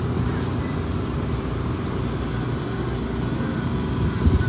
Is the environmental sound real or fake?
real